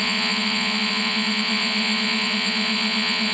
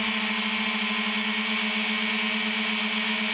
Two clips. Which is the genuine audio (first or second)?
second